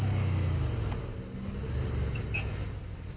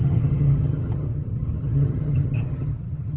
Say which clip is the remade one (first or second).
second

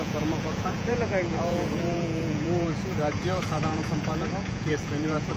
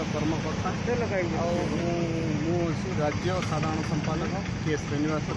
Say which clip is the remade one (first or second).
first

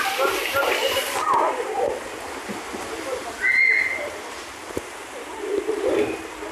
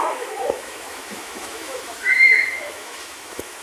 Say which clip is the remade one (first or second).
second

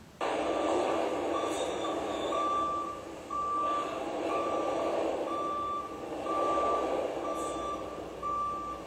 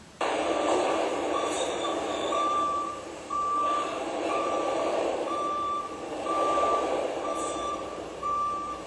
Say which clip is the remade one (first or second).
second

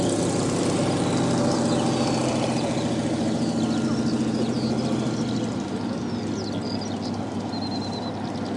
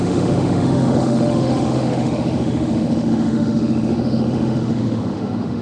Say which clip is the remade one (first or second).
second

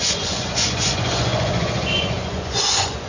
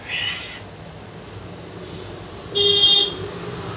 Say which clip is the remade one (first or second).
first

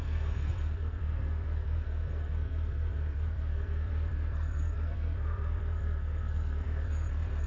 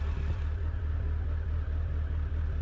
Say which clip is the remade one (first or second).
first